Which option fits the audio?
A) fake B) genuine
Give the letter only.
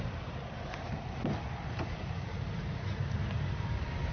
A